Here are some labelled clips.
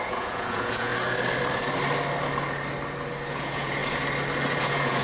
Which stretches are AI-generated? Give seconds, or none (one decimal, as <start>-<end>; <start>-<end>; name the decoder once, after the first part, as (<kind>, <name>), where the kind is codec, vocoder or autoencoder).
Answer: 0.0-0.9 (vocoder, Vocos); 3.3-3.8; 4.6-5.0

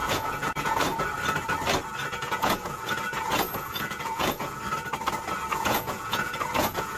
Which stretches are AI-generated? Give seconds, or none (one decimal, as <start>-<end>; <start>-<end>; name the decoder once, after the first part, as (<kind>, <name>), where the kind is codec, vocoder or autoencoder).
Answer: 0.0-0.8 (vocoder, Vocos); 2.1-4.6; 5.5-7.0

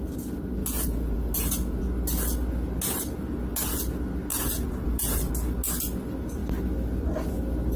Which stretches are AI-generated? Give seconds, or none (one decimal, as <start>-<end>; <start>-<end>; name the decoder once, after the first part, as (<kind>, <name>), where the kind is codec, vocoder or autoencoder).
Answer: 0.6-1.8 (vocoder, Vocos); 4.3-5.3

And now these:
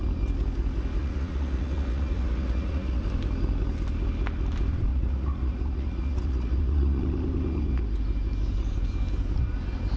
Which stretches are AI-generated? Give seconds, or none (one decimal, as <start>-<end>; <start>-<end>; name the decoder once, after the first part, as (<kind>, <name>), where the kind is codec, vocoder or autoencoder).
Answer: 1.0-3.0 (vocoder, Vocos); 4.9-7.0

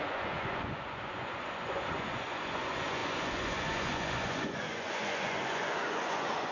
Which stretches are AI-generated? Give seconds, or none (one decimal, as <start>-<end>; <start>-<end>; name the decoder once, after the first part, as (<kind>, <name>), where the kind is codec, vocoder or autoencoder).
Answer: 0.0-6.5 (vocoder, Vocos)